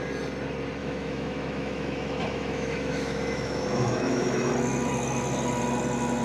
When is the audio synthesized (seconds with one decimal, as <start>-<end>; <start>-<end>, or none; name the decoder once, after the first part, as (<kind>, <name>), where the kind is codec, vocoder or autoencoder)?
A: 0.8-4.5 (autoencoder, DAC-VAE)